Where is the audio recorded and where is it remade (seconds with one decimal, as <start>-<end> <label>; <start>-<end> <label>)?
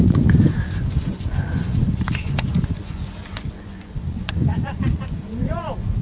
0.0-6.0 remade